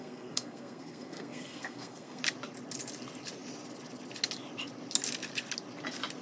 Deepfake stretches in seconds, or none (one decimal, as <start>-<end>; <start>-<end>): 0.0-2.2